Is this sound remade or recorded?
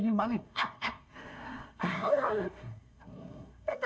remade